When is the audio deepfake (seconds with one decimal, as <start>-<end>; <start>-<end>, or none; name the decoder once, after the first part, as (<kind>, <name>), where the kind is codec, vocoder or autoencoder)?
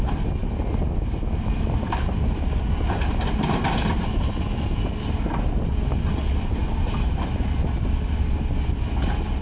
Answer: none